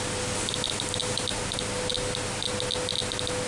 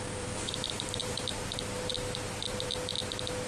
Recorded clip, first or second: first